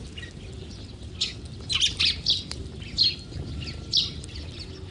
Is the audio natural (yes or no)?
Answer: yes